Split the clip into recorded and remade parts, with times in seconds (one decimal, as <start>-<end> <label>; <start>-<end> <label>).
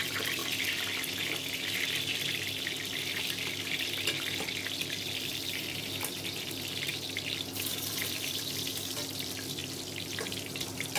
0.0-0.4 remade; 0.4-5.1 recorded; 5.1-6.9 remade; 6.9-7.7 recorded; 7.7-11.0 remade